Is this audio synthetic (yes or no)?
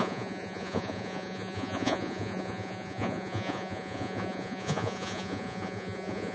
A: yes